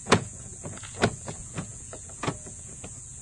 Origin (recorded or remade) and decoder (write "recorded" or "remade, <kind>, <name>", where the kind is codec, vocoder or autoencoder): remade, vocoder, Vocos